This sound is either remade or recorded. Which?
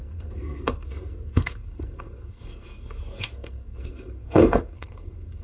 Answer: remade